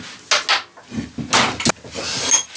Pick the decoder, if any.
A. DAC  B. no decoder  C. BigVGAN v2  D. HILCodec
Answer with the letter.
B